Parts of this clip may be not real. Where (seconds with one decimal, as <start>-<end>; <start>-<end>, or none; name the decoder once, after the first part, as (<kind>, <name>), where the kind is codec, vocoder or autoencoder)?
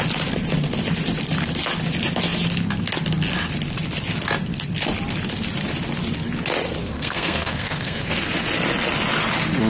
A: 6.8-8.1 (codec, SNAC)